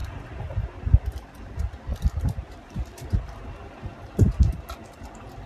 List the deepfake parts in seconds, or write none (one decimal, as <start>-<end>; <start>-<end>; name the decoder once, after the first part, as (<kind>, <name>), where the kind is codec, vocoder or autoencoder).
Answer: none